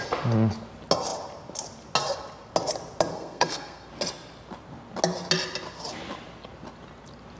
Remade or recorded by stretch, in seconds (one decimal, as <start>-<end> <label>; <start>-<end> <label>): 0.0-3.1 recorded; 3.1-3.9 remade; 3.9-7.4 recorded